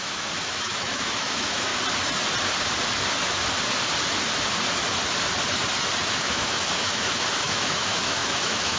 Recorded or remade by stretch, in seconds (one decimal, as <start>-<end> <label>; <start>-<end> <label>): 0.0-1.7 remade; 1.7-6.0 recorded; 6.0-8.8 remade